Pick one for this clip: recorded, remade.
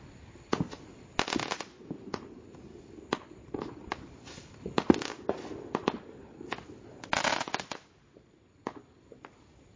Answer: recorded